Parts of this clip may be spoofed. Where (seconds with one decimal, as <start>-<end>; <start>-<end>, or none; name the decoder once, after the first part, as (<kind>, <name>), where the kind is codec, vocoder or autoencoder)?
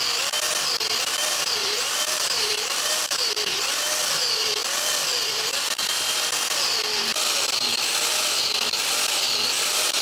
1.6-3.3 (vocoder, BigVGAN v2)